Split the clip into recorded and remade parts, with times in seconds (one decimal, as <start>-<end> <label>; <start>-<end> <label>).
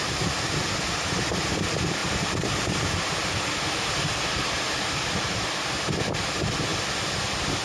0.0-2.0 recorded; 2.0-6.2 remade; 6.2-7.6 recorded